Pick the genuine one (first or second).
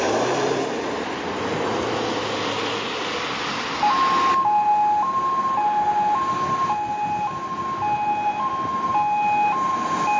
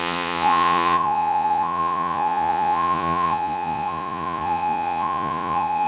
first